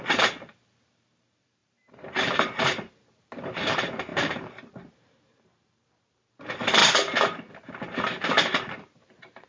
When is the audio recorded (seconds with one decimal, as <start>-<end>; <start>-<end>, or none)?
6.8-7.5